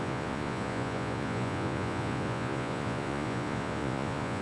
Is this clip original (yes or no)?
no